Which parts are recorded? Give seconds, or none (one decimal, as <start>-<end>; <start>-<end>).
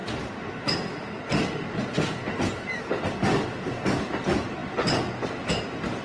0.0-6.0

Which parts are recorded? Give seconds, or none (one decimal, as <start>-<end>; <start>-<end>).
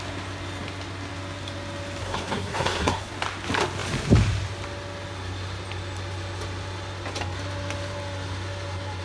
0.0-2.0; 3.1-9.0